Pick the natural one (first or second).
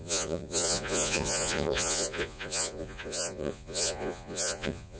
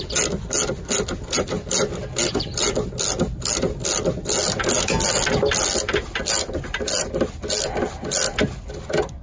second